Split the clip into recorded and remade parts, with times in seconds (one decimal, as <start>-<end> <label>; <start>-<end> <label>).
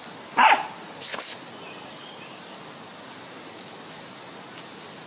0.0-5.1 recorded